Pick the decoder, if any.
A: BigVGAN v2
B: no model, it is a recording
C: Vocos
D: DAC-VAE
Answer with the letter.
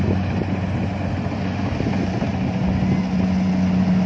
B